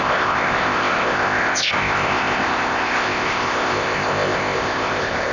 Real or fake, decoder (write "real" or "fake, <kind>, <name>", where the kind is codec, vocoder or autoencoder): fake, codec, ZipCodec